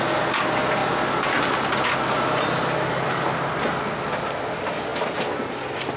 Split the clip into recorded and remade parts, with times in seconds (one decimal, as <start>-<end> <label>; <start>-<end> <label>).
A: 0.0-6.0 recorded